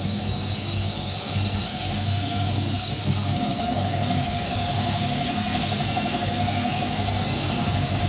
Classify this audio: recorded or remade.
remade